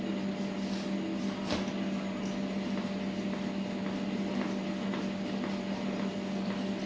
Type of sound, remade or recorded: recorded